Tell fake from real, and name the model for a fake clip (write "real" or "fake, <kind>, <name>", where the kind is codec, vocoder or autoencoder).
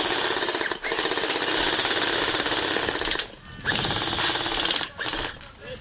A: real